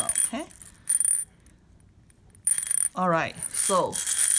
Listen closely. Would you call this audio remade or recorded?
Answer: recorded